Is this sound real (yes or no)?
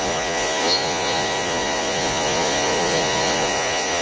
no